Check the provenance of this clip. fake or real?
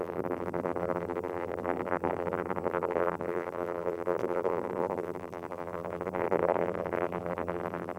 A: fake